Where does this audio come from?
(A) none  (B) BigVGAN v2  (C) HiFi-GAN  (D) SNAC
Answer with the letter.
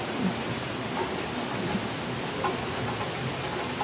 A